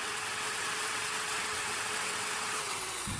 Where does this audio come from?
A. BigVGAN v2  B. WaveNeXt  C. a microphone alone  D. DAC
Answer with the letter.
B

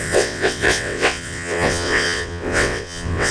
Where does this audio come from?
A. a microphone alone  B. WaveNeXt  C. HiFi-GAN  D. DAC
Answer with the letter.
B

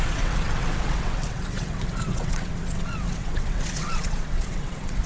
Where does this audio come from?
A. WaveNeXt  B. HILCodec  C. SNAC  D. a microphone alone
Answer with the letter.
A